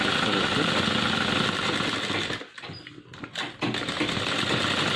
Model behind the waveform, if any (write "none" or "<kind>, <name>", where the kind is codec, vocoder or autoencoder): none